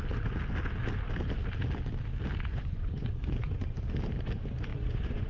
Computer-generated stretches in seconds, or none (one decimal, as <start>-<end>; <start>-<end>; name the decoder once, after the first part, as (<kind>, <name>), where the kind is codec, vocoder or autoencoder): 2.5-3.8 (vocoder, Vocos); 4.7-5.3